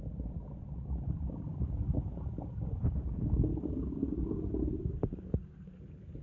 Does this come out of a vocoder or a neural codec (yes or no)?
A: no